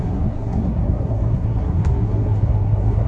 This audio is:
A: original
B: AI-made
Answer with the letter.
B